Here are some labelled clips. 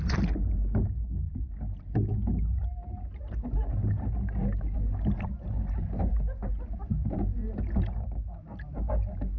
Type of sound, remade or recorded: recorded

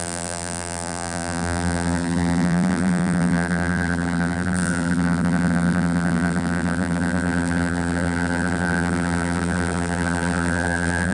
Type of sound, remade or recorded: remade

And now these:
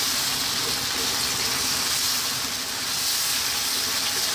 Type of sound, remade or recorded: recorded